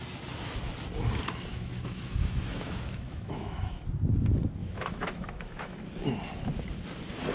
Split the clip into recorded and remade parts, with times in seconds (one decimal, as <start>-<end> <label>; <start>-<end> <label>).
0.0-1.5 recorded; 1.5-3.8 remade; 3.8-4.6 recorded; 4.6-5.8 remade; 5.8-7.3 recorded